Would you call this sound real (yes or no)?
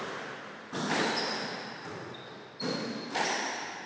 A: yes